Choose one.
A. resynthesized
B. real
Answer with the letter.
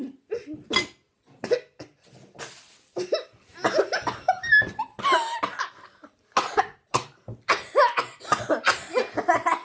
B